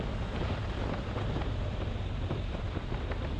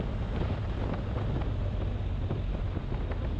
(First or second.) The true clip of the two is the second